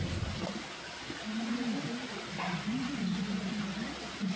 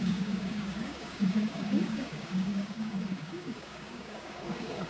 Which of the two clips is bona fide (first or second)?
first